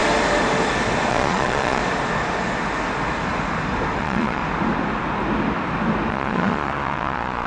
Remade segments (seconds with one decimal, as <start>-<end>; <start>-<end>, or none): 1.1-1.8; 4.0-4.4; 6.1-7.5